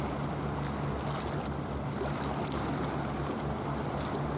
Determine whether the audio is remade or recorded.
recorded